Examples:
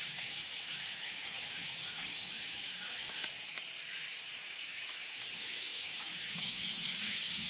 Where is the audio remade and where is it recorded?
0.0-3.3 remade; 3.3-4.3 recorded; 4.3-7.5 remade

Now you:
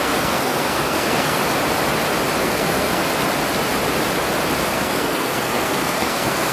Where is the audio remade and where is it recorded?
0.0-1.4 remade; 1.4-2.4 recorded; 2.4-3.0 remade; 3.0-4.7 recorded; 4.7-6.5 remade

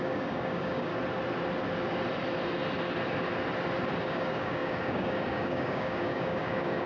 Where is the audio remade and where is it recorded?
0.0-0.9 remade; 0.9-4.0 recorded; 4.0-6.9 remade